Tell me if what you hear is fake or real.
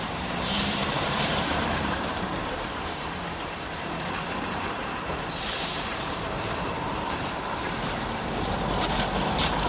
fake